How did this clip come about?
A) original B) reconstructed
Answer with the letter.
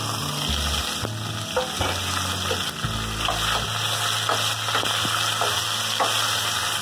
A